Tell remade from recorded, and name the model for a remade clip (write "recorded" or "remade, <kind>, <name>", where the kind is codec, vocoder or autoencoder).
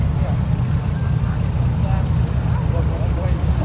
recorded